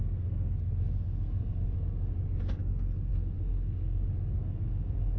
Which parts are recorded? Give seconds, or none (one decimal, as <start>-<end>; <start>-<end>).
2.1-2.7